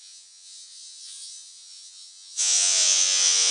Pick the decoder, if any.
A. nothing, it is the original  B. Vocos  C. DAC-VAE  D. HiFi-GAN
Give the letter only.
B